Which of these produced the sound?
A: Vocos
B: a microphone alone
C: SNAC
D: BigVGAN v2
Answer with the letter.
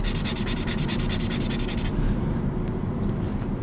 B